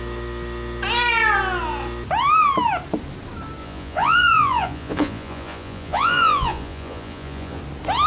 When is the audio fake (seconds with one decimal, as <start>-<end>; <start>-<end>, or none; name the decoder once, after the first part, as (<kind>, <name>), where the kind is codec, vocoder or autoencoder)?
3.6-7.6 (vocoder, Vocos)

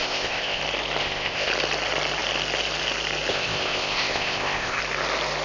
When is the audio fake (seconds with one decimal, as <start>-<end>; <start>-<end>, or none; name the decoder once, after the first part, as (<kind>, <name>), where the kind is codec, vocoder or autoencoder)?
0.0-0.6 (codec, ZipCodec); 1.0-1.5; 3.3-4.8

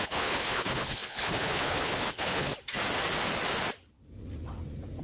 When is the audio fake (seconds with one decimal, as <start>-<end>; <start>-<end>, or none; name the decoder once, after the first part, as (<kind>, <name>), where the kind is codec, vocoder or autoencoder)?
0.0-2.5 (codec, HILCodec)

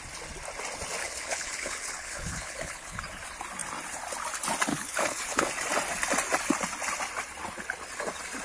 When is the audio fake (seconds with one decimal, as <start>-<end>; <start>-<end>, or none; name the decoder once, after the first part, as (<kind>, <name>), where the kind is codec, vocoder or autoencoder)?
1.0-3.0 (codec, HILCodec); 4.7-5.5

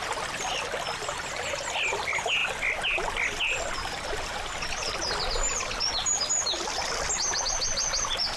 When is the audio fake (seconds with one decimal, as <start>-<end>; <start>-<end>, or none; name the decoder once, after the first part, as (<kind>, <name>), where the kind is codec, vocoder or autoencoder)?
none

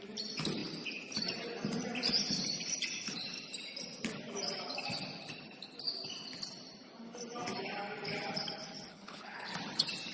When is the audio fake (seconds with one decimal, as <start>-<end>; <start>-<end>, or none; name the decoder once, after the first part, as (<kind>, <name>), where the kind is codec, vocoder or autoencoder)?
8.9-9.5 (codec, HILCodec)

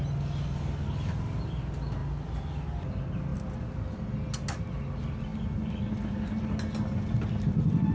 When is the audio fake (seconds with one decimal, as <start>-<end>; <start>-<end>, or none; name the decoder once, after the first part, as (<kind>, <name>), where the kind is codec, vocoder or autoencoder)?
none

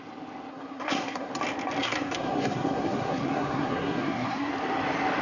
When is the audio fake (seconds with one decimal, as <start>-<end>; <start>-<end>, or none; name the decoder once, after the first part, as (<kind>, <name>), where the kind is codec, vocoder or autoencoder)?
0.5-1.3 (codec, SNAC); 1.8-4.5